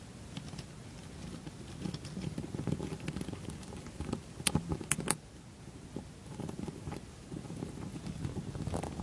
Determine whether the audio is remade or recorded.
recorded